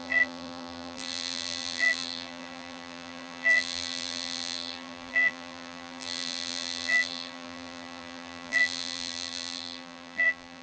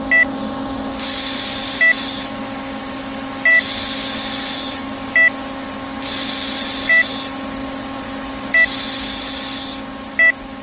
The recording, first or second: second